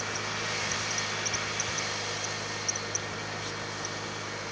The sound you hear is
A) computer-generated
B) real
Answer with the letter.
B